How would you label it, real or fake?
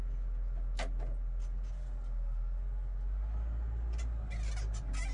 real